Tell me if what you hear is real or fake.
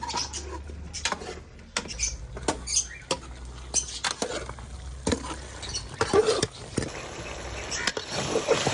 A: real